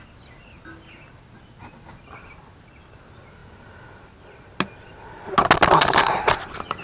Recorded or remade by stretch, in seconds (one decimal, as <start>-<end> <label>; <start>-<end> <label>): 0.0-6.8 recorded